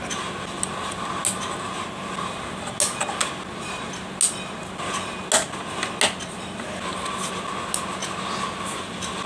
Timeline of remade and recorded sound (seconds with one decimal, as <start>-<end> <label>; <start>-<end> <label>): 0.0-9.3 recorded